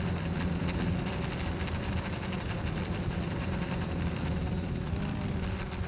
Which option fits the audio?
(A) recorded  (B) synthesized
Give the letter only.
B